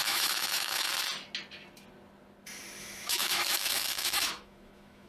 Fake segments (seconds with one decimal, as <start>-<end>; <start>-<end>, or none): 0.0-0.9; 2.8-5.1